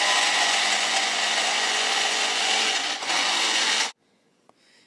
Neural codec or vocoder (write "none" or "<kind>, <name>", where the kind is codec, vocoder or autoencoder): vocoder, Vocos